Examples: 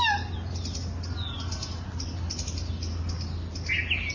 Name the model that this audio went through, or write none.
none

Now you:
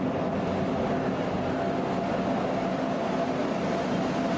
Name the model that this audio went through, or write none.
none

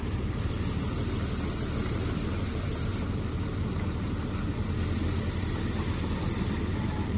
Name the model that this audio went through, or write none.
none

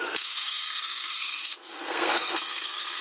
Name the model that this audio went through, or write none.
codec, SNAC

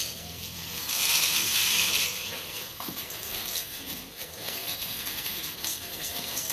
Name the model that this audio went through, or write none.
codec, SNAC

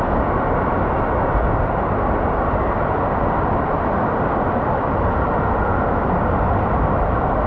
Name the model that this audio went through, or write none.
none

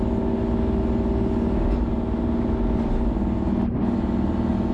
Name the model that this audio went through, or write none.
none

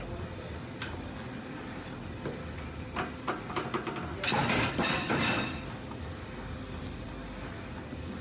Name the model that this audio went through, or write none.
none